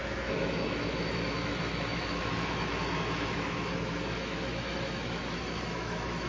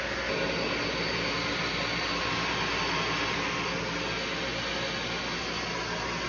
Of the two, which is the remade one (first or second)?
first